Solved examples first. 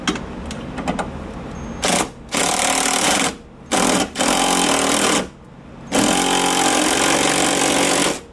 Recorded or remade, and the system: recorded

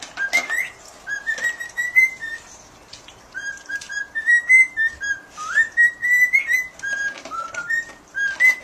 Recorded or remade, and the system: recorded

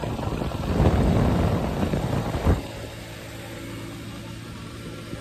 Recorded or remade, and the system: recorded